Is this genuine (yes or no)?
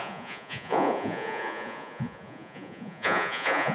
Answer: no